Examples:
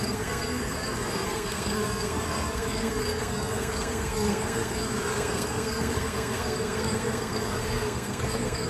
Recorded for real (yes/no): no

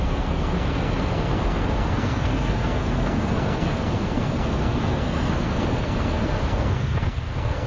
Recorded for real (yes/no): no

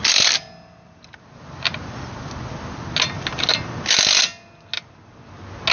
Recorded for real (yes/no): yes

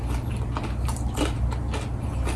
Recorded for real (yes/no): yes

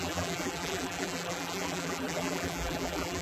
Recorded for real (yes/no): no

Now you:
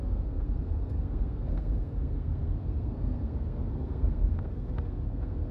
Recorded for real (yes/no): no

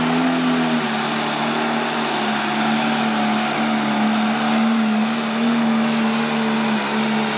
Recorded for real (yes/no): yes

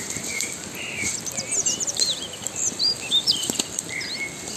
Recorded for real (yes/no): no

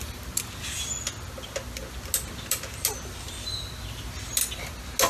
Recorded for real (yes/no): yes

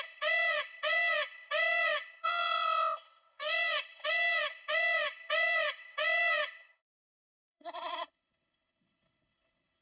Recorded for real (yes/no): no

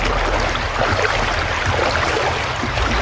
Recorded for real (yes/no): yes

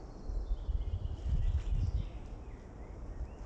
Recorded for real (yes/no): yes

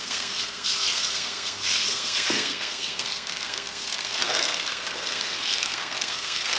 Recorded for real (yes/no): no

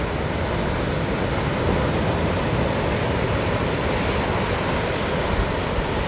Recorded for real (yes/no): yes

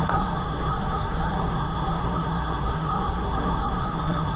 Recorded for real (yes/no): no